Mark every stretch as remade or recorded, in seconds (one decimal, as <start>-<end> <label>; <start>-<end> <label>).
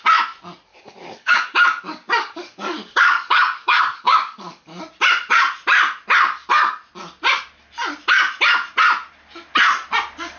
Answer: 0.0-0.7 recorded; 0.7-4.8 remade; 4.8-10.4 recorded